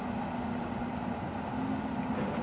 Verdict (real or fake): real